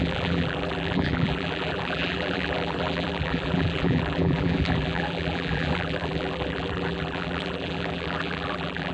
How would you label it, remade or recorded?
remade